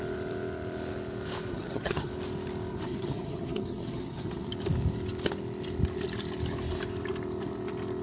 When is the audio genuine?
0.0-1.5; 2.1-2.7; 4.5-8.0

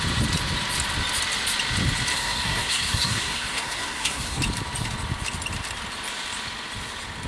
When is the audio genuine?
0.0-2.1; 4.4-7.3